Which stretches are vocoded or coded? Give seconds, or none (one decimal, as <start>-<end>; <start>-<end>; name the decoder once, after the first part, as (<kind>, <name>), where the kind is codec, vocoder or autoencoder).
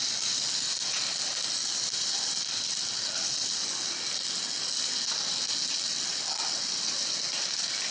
none